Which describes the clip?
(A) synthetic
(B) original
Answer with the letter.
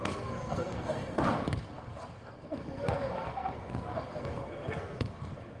A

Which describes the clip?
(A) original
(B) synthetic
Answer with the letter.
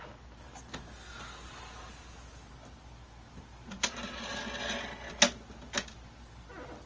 A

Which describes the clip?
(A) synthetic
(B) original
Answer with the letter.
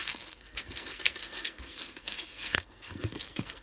A